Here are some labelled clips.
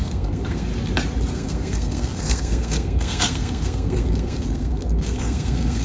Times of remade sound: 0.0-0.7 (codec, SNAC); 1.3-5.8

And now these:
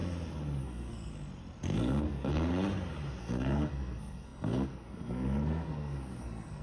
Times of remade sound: 0.6-1.1 (codec, SNAC); 1.6-2.5; 3.2-6.6

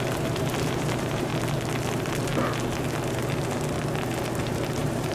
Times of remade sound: 0.0-1.3 (vocoder, BigVGAN v2); 4.4-5.1

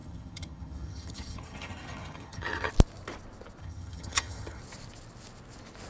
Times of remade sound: 0.0-2.7 (vocoder, HiFi-GAN); 3.6-4.6

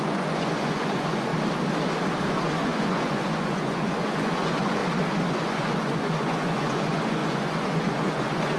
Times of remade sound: 0.0-1.3 (vocoder, Vocos); 2.3-4.8; 5.3-8.6

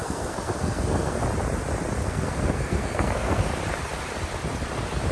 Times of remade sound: 0.0-1.2 (codec, SNAC); 2.0-3.5

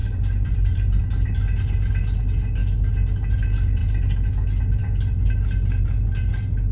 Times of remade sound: 0.0-1.0 (vocoder, BigVGAN v2)